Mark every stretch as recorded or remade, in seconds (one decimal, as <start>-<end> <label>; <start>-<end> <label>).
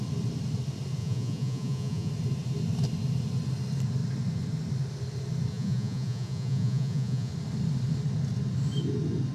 0.0-1.0 recorded; 1.0-2.1 remade; 2.1-5.5 recorded; 5.5-7.3 remade; 7.3-9.3 recorded